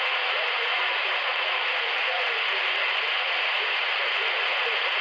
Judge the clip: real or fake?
fake